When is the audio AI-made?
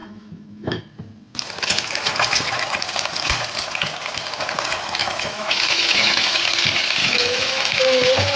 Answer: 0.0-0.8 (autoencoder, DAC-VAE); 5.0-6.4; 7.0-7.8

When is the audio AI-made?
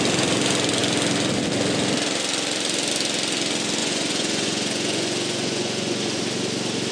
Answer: 3.8-6.2 (vocoder, Vocos)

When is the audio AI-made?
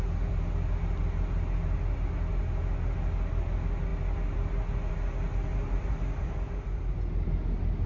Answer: 5.5-7.1 (vocoder, BigVGAN v2)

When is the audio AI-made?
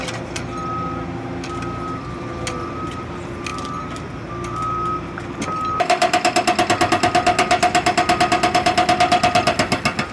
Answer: none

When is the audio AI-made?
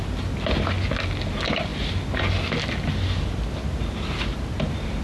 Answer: none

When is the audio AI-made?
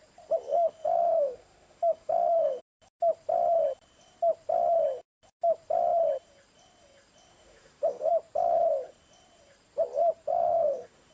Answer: 0.5-2.6 (autoencoder, DAC-VAE); 7.3-8.1; 10.3-11.1